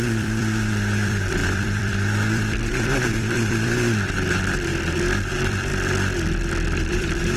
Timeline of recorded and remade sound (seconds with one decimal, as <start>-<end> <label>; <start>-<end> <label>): 0.0-4.7 remade; 4.7-5.3 recorded; 5.3-5.7 remade; 5.7-6.9 recorded; 6.9-7.4 remade